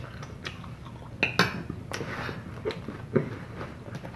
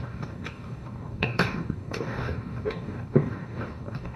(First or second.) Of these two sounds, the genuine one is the first